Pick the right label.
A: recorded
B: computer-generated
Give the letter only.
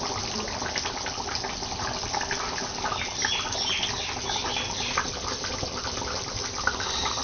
A